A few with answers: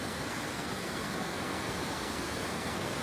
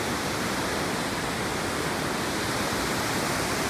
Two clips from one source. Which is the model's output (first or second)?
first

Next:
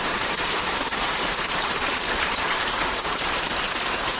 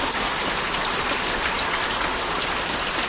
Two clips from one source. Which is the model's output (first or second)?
first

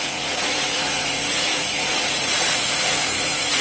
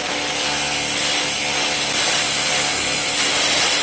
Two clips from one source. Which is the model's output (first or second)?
first